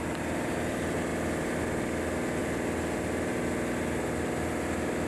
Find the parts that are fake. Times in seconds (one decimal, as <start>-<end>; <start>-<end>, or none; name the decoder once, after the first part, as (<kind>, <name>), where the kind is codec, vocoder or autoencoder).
none